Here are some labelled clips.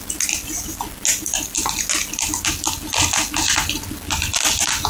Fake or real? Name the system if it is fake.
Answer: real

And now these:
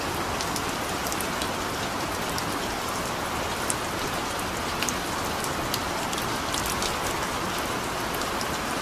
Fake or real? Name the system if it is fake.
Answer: real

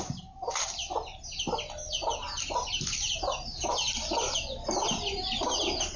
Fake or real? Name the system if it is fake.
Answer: fake, vocoder, BigVGAN v2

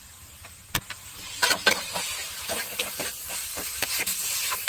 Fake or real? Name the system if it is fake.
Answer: fake, vocoder, BigVGAN v2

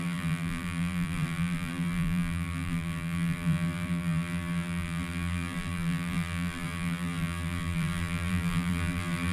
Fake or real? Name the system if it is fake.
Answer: fake, vocoder, BigVGAN v2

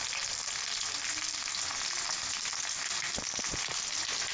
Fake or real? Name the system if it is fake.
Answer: real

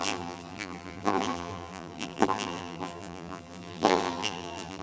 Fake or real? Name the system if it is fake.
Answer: fake, vocoder, BigVGAN v2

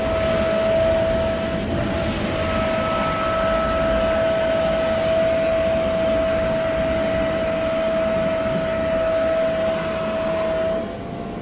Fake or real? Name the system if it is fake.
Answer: real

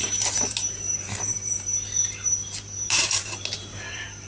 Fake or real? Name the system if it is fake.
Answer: fake, vocoder, BigVGAN v2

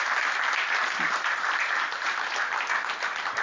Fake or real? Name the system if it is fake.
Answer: real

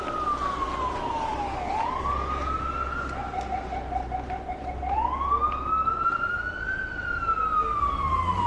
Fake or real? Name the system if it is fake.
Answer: real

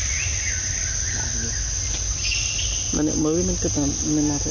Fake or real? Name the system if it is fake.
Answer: real